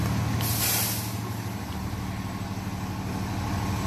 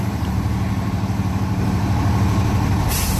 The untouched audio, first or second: first